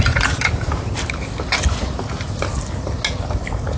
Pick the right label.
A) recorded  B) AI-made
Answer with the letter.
A